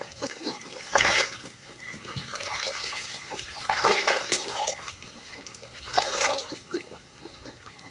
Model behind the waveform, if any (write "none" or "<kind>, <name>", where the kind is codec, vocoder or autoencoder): codec, SNAC